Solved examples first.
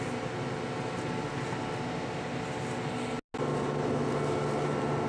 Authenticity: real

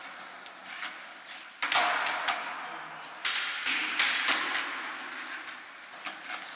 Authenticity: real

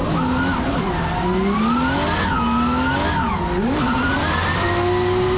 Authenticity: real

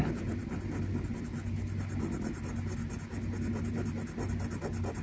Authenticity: real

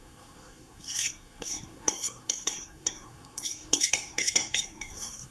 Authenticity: fake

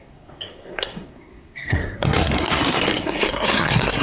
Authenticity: fake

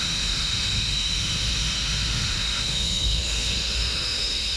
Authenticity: fake